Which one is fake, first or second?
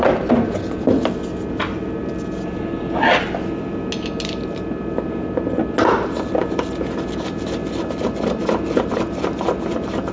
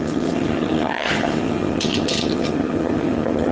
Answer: second